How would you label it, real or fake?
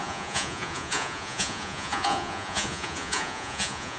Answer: fake